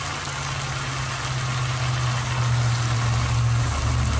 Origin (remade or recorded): recorded